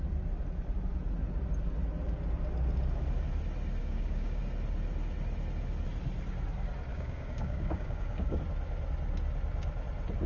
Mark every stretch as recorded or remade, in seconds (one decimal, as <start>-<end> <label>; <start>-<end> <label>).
0.0-3.8 recorded; 3.8-4.4 remade; 4.4-6.9 recorded; 6.9-8.4 remade; 8.4-10.3 recorded